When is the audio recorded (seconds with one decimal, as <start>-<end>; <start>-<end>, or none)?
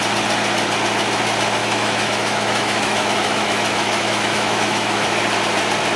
0.0-1.6; 5.2-6.0